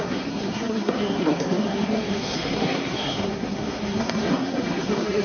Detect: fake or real fake